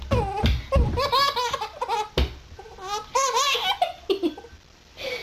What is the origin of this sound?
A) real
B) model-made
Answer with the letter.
A